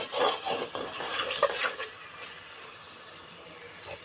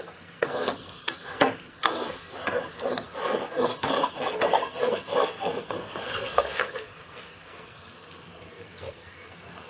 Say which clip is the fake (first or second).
second